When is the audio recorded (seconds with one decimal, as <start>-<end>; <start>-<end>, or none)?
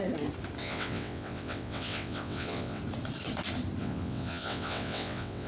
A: 0.0-0.6; 2.8-3.8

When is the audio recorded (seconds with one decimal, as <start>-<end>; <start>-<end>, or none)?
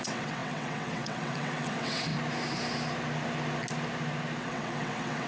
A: 2.1-4.4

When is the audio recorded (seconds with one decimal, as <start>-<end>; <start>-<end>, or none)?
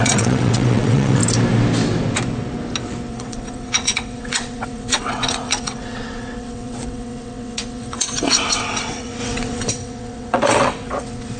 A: 1.2-3.1